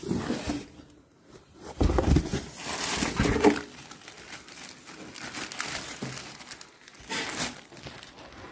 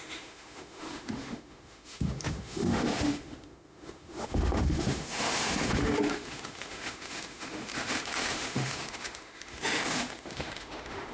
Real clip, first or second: first